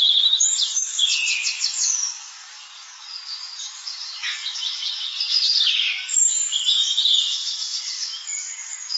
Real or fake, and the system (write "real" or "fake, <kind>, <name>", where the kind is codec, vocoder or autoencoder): fake, codec, DAC